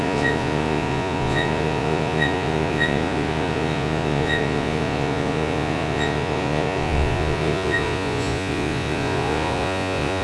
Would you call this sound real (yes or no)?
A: no